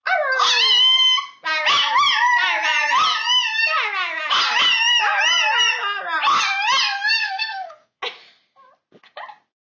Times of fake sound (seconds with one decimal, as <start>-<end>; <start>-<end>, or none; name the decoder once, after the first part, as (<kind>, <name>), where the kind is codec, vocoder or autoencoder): 7.2-8.0 (codec, SNAC)